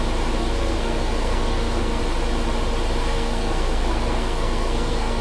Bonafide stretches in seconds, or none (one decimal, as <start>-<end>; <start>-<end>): 0.0-0.4; 2.0-3.0